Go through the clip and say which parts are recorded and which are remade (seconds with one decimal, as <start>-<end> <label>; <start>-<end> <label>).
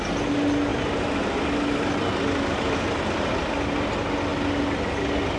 0.0-5.4 recorded